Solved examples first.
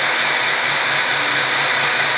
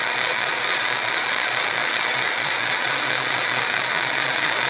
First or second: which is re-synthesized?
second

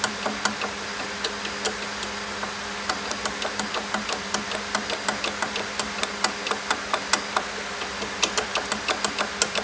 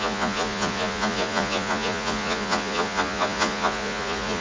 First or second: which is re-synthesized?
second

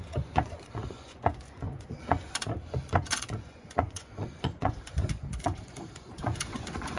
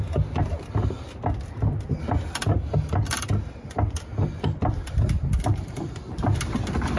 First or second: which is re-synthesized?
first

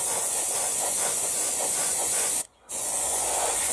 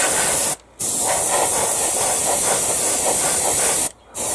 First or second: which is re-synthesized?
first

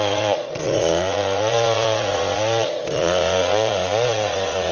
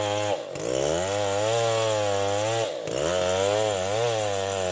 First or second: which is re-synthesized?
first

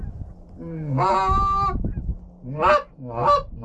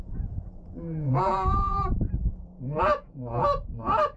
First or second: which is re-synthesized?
second